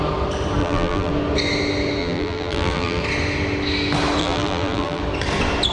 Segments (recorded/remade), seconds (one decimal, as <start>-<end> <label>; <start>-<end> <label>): 0.0-0.6 recorded; 0.6-1.1 remade; 1.1-2.0 recorded; 2.0-3.0 remade; 3.0-4.2 recorded; 4.2-5.0 remade; 5.0-5.7 recorded